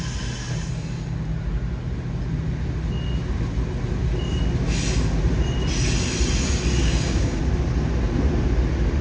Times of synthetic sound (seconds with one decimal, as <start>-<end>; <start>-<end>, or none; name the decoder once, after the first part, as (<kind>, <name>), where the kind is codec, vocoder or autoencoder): 6.8-7.4 (codec, DAC)